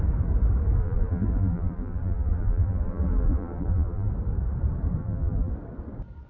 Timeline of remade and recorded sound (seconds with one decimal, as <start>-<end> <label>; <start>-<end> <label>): 0.0-0.8 recorded; 0.8-4.1 remade; 4.1-5.0 recorded; 5.0-5.5 remade; 5.5-6.3 recorded